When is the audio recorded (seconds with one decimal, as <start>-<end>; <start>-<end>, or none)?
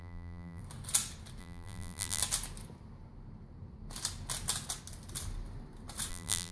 0.6-1.4; 2.2-6.1